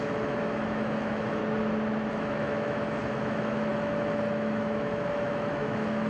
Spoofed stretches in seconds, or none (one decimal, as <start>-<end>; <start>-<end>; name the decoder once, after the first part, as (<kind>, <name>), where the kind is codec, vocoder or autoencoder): 0.0-1.4 (autoencoder, DAC-VAE); 2.1-6.1